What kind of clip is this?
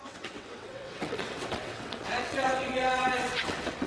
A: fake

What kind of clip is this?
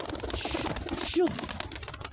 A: real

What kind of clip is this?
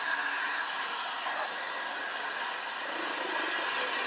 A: real